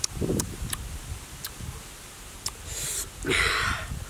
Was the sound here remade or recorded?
recorded